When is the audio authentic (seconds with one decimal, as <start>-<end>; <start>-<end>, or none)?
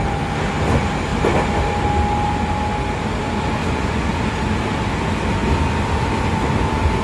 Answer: 0.0-3.6; 4.1-7.0